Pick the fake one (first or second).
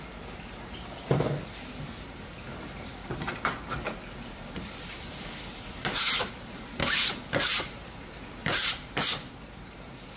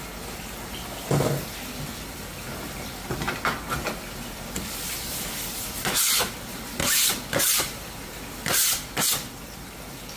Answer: first